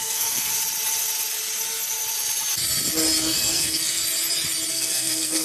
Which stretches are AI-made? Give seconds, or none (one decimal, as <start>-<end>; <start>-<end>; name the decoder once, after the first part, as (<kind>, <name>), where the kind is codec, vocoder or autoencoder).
0.0-0.5 (codec, SNAC); 3.2-4.0; 4.7-5.4